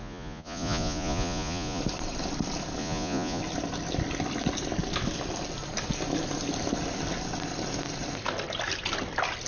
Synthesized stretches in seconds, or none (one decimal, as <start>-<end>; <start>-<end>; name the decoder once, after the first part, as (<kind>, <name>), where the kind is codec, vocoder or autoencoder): 0.0-1.8 (vocoder, Vocos); 2.8-3.4